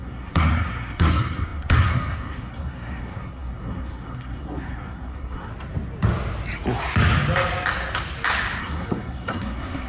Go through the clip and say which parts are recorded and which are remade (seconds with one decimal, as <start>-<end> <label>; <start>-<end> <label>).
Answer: 0.0-5.5 remade; 5.5-8.6 recorded; 8.6-9.9 remade